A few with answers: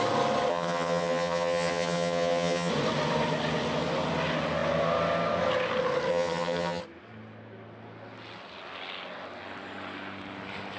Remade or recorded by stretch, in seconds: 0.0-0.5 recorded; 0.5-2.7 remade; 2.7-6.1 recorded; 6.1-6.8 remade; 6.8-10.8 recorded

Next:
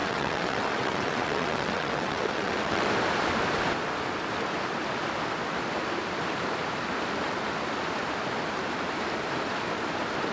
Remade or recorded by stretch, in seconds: 0.0-2.9 remade; 2.9-10.3 recorded

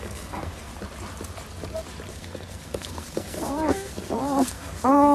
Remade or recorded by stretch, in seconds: 0.0-0.7 remade; 0.7-2.1 recorded; 2.1-5.1 remade

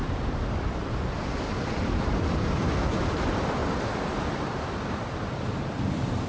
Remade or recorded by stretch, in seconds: 0.0-3.6 remade; 3.6-4.5 recorded; 4.5-6.3 remade

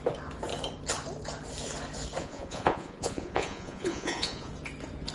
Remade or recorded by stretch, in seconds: 0.0-2.2 recorded; 2.2-4.5 remade; 4.5-5.1 recorded

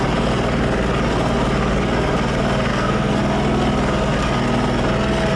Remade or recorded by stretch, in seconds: 0.0-2.7 recorded; 2.7-3.2 remade; 3.2-5.4 recorded

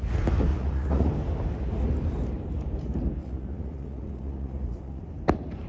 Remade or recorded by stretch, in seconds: 0.0-0.5 recorded; 0.5-1.1 remade; 1.1-3.2 recorded; 3.2-5.0 remade; 5.0-5.7 recorded